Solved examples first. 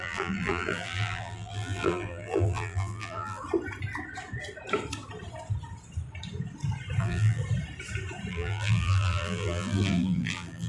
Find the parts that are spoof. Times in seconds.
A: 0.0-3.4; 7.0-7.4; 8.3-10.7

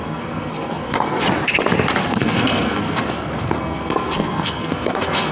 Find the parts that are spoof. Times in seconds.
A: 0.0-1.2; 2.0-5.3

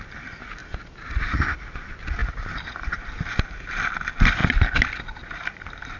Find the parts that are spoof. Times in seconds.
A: none